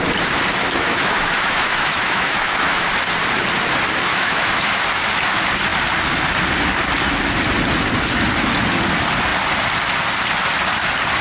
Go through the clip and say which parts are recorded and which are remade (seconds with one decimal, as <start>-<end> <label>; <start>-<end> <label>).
0.0-0.6 recorded; 0.6-2.9 remade; 2.9-4.1 recorded; 4.1-4.8 remade; 4.8-11.2 recorded